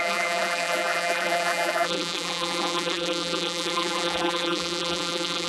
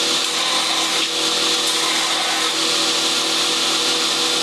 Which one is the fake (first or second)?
first